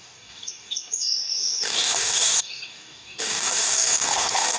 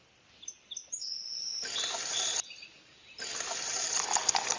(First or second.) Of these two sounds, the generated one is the first